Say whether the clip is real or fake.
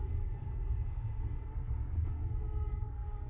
fake